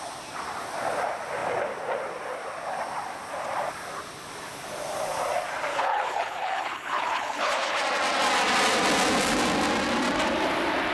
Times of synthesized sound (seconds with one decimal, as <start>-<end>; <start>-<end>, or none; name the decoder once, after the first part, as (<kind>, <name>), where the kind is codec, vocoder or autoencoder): 5.7-7.8 (codec, HILCodec)